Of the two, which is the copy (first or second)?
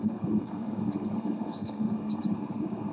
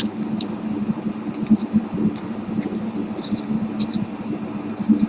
first